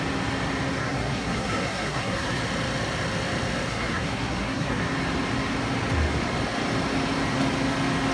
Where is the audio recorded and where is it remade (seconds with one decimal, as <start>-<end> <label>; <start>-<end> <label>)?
0.0-0.8 recorded; 0.8-2.4 remade; 2.4-3.7 recorded; 3.7-4.8 remade; 4.8-8.1 recorded